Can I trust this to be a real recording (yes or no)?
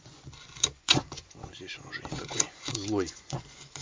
no